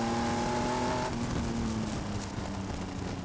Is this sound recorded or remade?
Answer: recorded